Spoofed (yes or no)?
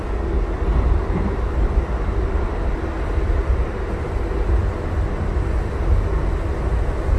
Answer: no